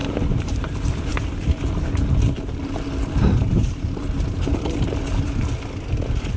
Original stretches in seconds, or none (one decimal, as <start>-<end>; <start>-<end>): 0.7-3.4; 4.5-6.4